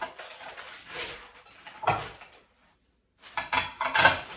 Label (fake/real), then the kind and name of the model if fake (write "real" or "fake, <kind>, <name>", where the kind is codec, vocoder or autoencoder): real